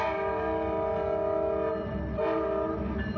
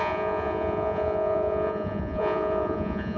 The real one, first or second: first